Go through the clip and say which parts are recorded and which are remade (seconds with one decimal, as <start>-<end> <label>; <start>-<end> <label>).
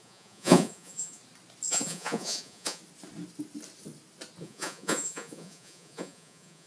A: 0.0-1.2 remade; 1.2-1.7 recorded; 1.7-2.8 remade; 2.8-4.4 recorded; 4.4-6.7 remade